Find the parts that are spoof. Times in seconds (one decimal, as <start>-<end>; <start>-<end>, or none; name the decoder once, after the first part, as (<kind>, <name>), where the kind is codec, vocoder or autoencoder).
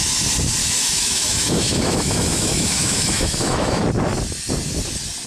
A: 0.6-3.8 (autoencoder, DAC-VAE)